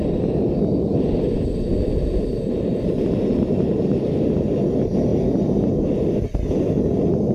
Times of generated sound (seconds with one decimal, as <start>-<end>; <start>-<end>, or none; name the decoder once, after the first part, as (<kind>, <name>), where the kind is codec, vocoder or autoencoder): 1.9-4.6 (vocoder, BigVGAN v2)